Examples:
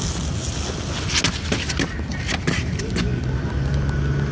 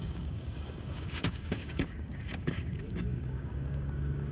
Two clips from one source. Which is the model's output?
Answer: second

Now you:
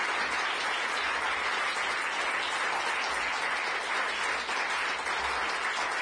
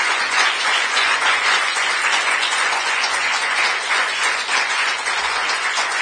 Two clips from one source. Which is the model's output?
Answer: second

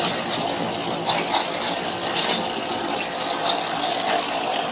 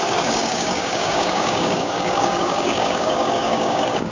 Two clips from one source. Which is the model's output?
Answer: second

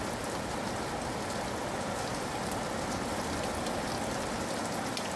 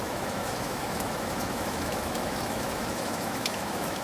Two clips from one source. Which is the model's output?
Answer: second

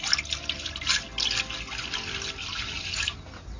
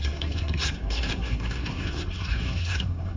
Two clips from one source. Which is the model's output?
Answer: second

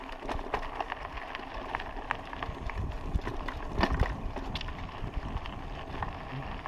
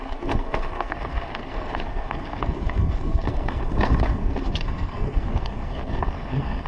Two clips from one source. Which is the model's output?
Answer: second